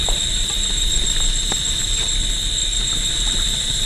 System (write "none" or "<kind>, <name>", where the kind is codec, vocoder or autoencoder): none